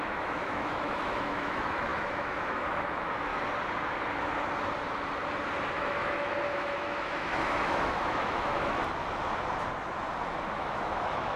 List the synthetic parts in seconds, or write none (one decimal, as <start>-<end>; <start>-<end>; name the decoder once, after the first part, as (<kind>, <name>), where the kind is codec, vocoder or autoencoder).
0.0-3.3 (autoencoder, DAC-VAE); 5.7-8.8; 10.5-11.4